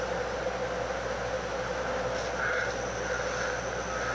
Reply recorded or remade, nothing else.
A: recorded